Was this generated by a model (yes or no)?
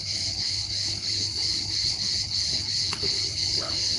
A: yes